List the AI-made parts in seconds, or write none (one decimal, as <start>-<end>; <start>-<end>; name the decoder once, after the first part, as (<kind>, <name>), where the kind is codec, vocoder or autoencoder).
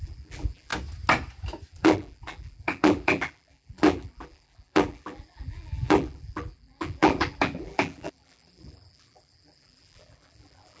0.0-0.7 (vocoder, BigVGAN v2); 1.7-10.8